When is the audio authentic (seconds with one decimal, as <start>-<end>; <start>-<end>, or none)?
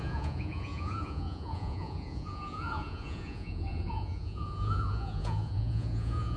none